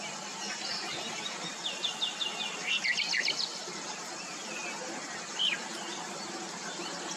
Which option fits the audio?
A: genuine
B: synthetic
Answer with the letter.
A